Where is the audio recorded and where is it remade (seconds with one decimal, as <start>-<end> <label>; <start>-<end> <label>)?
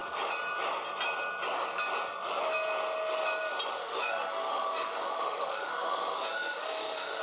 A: 0.0-3.8 recorded; 3.8-7.2 remade